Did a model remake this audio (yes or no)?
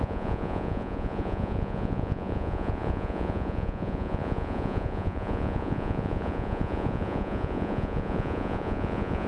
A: yes